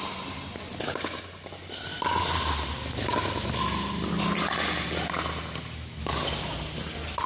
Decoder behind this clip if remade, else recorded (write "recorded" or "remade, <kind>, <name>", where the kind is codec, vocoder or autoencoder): recorded